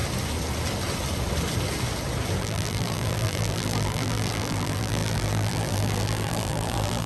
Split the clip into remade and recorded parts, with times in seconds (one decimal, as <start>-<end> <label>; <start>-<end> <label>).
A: 0.0-2.4 recorded; 2.4-7.1 remade